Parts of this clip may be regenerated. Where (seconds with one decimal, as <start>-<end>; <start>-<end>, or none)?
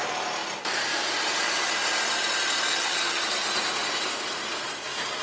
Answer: 2.7-3.2